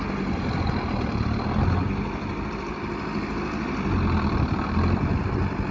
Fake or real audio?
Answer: real